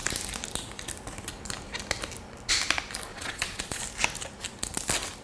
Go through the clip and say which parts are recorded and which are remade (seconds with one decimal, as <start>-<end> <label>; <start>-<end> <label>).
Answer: 0.0-3.1 recorded; 3.1-3.8 remade; 3.8-5.2 recorded